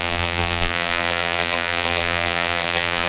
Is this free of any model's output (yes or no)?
no